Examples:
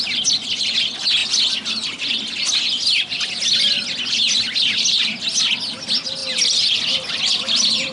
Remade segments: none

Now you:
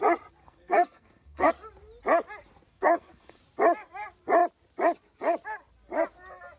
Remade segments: 0.4-1.5 (codec, SNAC); 2.7-3.4

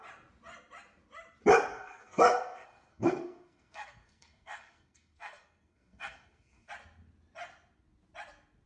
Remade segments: 1.7-6.7 (codec, SNAC)

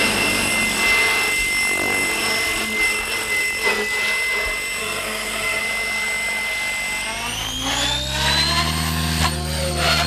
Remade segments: 4.8-5.6 (codec, SNAC)